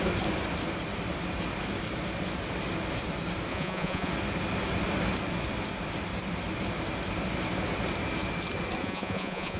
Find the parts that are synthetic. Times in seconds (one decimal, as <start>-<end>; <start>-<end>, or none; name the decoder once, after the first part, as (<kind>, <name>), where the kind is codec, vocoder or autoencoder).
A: 3.5-4.1 (vocoder, Vocos); 8.8-9.6